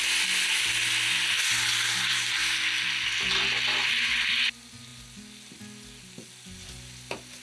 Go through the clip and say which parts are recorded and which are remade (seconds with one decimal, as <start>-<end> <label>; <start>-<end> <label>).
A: 0.0-7.4 recorded